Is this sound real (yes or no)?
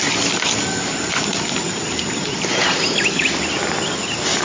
yes